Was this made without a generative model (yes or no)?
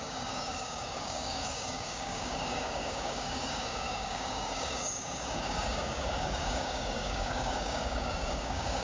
no